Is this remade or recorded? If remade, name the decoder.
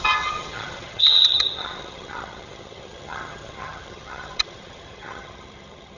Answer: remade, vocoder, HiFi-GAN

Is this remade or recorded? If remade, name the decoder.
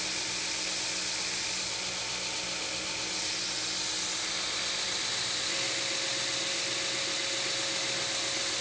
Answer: recorded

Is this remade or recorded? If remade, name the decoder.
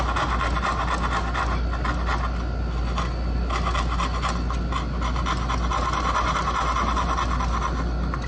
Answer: recorded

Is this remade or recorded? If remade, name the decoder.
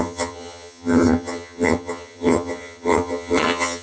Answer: remade, vocoder, HiFi-GAN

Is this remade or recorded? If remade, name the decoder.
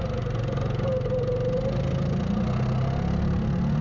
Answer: recorded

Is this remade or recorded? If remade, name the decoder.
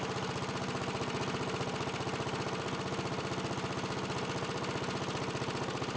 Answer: recorded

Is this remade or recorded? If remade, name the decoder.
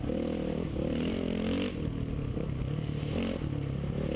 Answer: recorded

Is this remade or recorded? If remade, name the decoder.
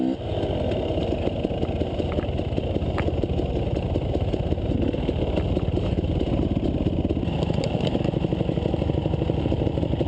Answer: recorded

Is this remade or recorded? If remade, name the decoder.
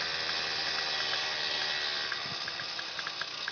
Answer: recorded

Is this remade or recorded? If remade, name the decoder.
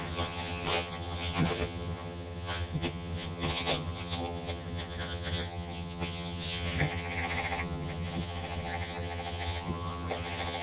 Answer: remade, vocoder, HiFi-GAN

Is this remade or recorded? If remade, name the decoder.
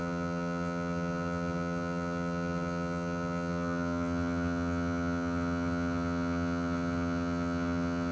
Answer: remade, vocoder, HiFi-GAN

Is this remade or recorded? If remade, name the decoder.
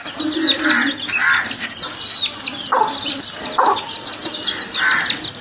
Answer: recorded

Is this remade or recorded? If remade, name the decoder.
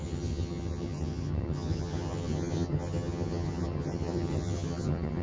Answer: remade, vocoder, HiFi-GAN